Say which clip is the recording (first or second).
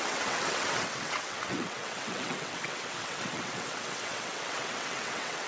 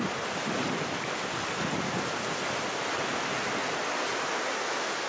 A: second